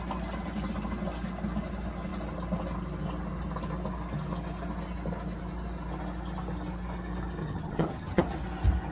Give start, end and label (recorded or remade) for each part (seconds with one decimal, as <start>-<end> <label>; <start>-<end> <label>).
0.0-7.4 recorded; 7.4-8.2 remade; 8.2-8.9 recorded